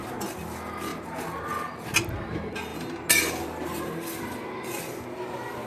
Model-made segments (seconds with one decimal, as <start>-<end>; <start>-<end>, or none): none